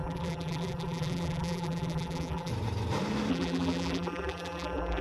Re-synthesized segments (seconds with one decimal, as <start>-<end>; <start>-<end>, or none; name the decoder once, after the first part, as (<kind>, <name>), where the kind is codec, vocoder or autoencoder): 0.0-2.5 (vocoder, BigVGAN v2); 3.3-5.0